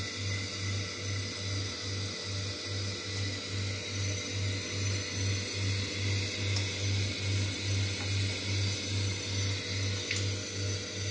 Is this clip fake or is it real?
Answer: real